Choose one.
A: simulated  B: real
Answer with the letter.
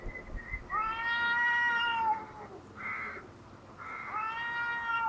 B